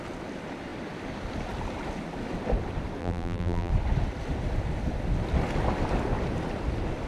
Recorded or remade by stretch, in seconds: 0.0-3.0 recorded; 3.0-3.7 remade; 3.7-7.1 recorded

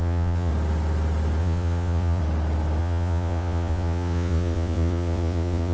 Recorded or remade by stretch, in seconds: 0.0-0.5 remade; 0.5-1.4 recorded; 1.4-2.2 remade; 2.2-2.8 recorded; 2.8-5.7 remade